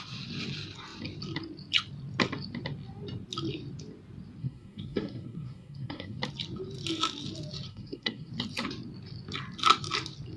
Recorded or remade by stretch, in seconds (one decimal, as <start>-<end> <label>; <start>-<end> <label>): 0.0-4.4 recorded; 4.4-6.2 remade; 6.2-7.7 recorded; 7.7-8.3 remade; 8.3-10.4 recorded